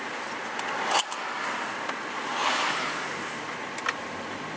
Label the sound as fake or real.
real